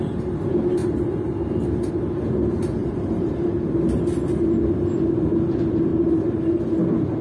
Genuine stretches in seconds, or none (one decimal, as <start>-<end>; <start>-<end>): 0.0-2.8; 3.7-5.9; 6.6-7.2